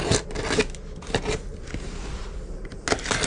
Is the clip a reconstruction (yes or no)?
no